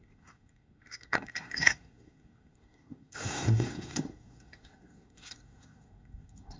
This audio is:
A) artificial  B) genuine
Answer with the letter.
A